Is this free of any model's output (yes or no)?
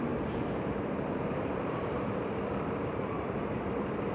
no